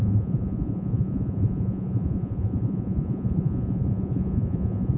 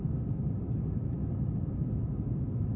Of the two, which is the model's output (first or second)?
first